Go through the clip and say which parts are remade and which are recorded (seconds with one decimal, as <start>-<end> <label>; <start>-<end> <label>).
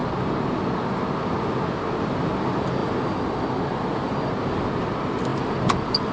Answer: 0.0-6.1 recorded